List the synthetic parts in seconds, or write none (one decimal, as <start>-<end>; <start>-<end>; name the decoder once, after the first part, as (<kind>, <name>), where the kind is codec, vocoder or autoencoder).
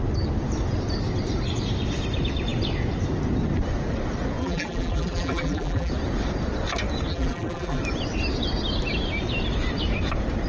4.4-5.9 (vocoder, BigVGAN v2); 7.1-7.8